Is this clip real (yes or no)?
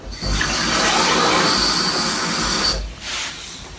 yes